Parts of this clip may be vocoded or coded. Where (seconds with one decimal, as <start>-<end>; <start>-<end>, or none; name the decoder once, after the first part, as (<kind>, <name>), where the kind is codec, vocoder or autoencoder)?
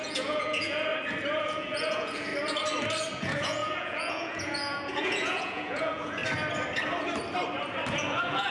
0.0-0.9 (vocoder, Vocos); 1.4-2.3; 3.1-6.2; 7.9-8.5